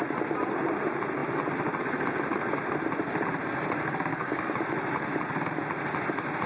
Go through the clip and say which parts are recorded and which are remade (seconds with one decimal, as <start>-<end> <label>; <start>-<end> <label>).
0.0-4.1 recorded; 4.1-4.6 remade; 4.6-6.5 recorded